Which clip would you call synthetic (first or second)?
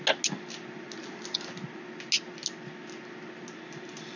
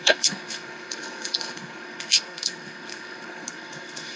second